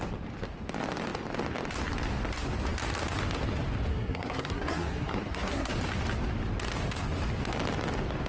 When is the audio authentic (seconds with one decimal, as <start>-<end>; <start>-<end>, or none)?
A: 0.0-3.9; 5.7-8.3